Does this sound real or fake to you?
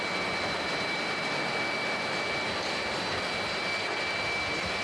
real